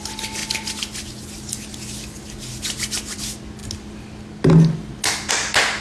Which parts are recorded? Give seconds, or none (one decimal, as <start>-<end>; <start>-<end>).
0.0-5.8